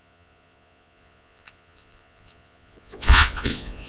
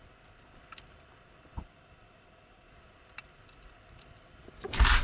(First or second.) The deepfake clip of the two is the first